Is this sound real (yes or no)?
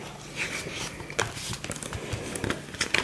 yes